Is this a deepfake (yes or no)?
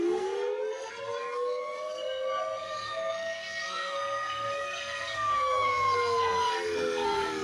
yes